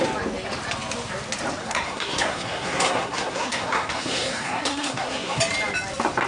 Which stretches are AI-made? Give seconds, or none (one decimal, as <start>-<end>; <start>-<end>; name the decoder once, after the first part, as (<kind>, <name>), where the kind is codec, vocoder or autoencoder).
1.6-5.4 (codec, SNAC)